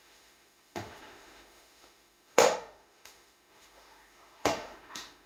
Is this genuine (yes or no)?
no